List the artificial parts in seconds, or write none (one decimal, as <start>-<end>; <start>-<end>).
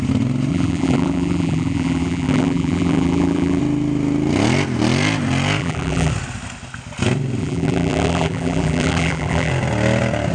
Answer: 0.5-3.6; 5.6-6.1; 7.4-9.5